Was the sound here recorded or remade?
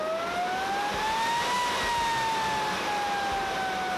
recorded